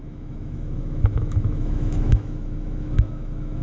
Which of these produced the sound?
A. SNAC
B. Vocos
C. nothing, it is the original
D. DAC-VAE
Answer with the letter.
D